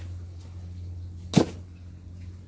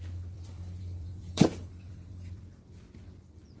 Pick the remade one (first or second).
second